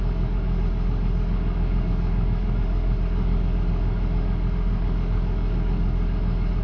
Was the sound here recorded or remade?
remade